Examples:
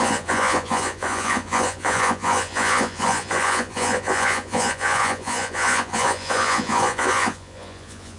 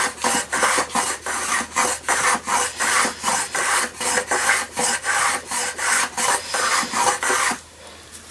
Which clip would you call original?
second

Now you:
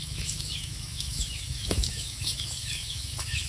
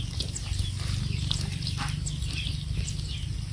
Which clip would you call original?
second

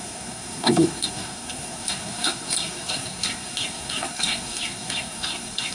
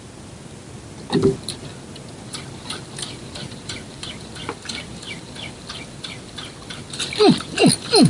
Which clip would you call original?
second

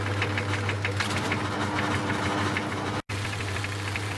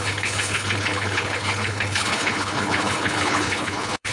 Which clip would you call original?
first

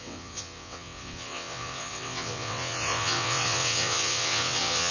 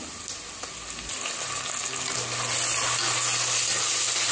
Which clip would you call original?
second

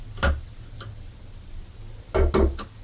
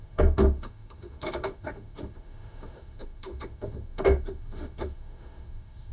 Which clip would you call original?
first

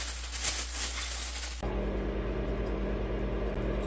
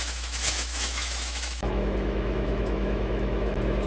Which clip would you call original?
first